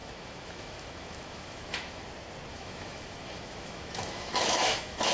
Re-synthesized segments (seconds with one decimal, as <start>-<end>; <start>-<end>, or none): 0.0-2.0; 2.5-5.1

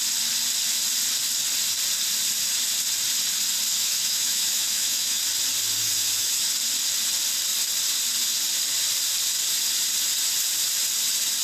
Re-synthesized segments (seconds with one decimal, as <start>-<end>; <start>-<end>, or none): 3.7-5.2; 5.8-6.5

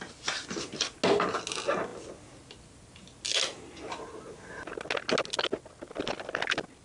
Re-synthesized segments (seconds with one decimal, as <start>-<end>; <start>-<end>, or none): none

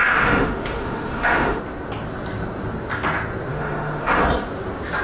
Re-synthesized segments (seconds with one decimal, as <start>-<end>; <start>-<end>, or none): 0.0-1.6; 3.5-4.2

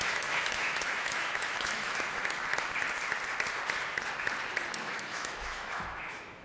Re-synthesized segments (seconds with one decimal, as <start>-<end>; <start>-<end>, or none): 0.0-2.2; 4.8-6.4

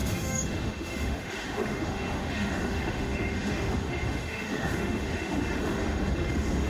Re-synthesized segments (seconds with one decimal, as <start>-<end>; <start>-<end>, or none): 0.0-6.7